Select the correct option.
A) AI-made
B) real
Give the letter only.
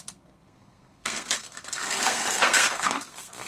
A